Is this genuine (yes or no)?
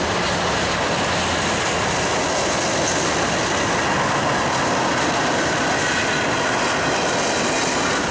yes